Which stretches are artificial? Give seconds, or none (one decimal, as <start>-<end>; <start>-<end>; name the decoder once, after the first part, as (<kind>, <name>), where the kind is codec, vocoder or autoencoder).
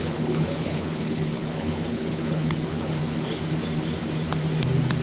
0.0-3.0 (codec, HILCodec)